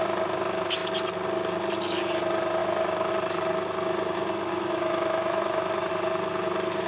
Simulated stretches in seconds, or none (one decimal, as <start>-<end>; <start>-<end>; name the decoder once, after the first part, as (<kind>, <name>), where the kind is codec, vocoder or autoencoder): 2.6-3.1 (autoencoder, DAC-VAE); 4.5-5.9